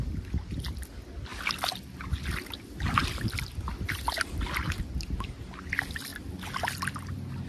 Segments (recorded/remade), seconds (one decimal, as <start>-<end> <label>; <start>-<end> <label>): 0.0-7.5 recorded